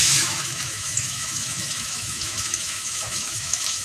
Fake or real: fake